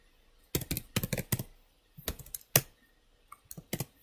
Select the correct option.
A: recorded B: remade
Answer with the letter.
A